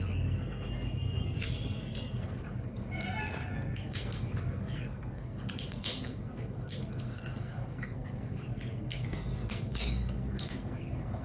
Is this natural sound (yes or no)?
no